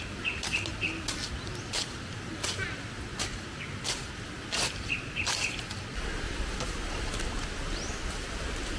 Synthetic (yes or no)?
no